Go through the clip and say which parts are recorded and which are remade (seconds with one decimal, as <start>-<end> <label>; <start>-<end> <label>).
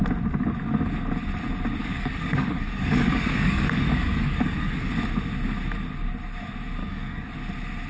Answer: 0.0-1.8 recorded; 1.8-4.9 remade; 4.9-6.8 recorded; 6.8-7.3 remade; 7.3-7.9 recorded